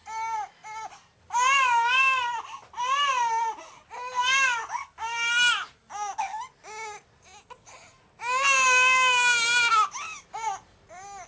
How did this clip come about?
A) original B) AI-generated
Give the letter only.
A